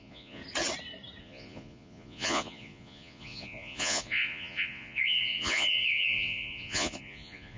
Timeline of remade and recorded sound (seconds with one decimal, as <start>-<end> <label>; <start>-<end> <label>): 0.0-0.4 remade; 0.4-1.2 recorded; 1.2-7.6 remade

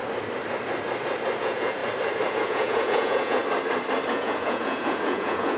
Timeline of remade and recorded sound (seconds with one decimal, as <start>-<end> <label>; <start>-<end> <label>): 0.0-1.4 recorded; 1.4-1.8 remade; 1.8-2.3 recorded; 2.3-3.4 remade; 3.4-4.1 recorded; 4.1-5.6 remade

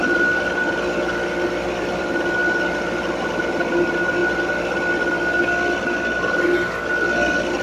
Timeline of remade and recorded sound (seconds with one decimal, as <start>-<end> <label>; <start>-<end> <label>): 0.0-4.2 remade; 4.2-6.2 recorded; 6.2-7.6 remade